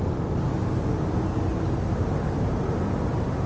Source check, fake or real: real